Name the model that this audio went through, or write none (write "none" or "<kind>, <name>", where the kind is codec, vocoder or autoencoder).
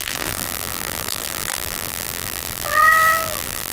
vocoder, BigVGAN v2